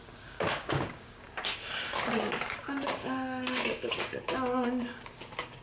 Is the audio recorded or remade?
remade